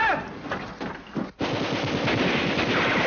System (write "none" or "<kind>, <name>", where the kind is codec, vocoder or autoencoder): none